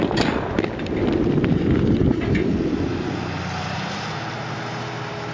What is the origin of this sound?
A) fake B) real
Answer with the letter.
B